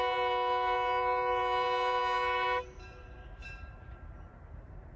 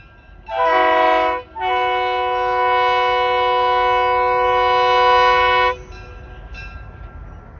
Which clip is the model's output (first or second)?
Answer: first